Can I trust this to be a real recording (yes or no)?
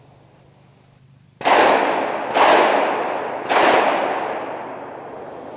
yes